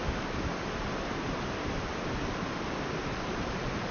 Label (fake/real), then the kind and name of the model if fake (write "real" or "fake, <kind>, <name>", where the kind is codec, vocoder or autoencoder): real